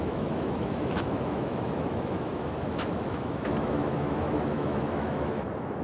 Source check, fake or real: fake